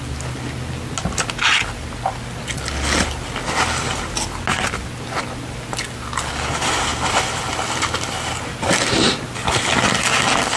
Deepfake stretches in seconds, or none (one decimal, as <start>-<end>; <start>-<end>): none